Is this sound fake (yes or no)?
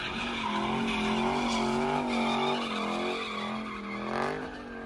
no